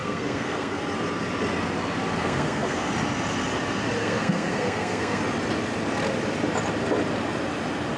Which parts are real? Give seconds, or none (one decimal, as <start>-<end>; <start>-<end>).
0.8-2.2; 2.9-4.0; 5.2-8.0